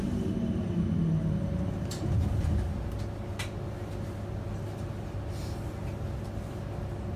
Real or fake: real